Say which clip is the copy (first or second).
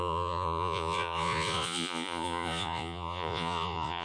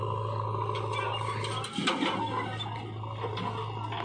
first